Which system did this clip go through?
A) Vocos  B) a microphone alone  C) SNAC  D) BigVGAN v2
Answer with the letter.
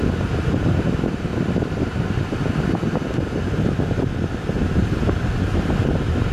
B